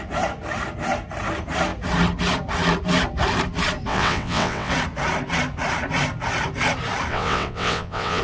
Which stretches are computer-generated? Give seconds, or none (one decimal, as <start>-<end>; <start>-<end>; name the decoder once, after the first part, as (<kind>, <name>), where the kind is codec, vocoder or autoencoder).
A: 3.9-4.7 (vocoder, WaveNeXt); 7.1-8.2